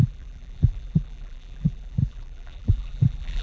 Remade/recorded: remade